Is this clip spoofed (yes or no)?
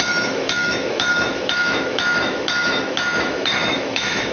yes